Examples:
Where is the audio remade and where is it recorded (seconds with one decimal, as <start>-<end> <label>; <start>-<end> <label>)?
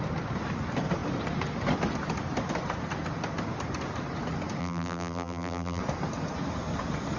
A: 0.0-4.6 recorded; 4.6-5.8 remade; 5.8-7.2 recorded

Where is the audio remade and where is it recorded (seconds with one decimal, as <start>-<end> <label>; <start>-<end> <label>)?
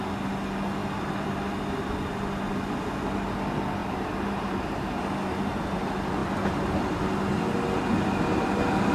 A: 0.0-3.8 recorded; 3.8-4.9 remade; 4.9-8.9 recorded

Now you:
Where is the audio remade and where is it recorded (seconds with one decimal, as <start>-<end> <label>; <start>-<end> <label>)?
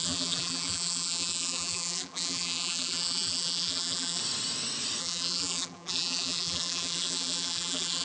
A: 0.0-4.2 remade; 4.2-5.0 recorded; 5.0-8.0 remade